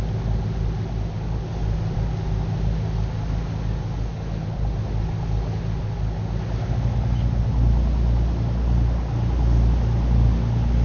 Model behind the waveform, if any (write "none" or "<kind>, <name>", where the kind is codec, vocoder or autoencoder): none